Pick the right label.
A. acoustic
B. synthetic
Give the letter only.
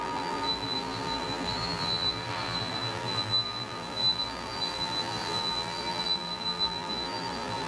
B